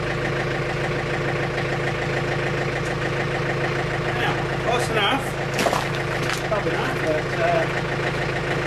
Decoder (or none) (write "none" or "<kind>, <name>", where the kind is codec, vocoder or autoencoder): none